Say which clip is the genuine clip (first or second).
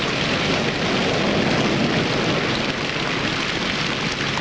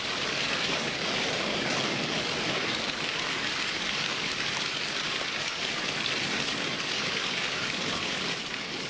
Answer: first